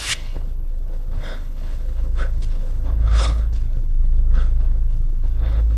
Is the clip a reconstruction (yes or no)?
yes